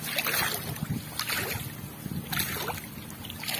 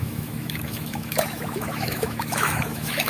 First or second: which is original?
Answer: first